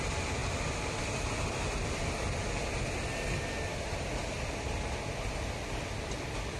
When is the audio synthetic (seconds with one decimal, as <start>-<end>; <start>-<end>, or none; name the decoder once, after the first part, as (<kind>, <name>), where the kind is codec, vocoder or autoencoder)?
none